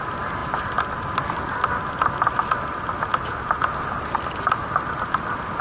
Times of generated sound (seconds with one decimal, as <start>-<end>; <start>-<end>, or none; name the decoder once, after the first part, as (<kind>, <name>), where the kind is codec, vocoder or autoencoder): none